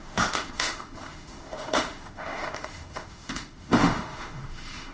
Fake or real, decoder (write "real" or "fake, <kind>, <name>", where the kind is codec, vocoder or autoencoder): fake, autoencoder, DAC-VAE